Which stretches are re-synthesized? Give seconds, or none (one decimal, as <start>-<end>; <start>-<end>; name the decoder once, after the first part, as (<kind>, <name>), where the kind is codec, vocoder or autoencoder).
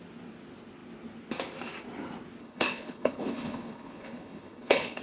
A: 2.4-5.0 (codec, HILCodec)